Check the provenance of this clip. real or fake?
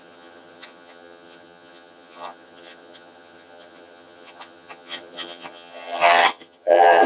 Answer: fake